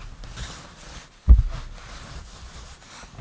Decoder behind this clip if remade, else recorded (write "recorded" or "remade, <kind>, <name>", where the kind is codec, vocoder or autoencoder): recorded